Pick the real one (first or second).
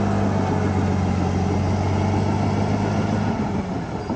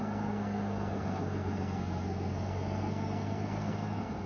first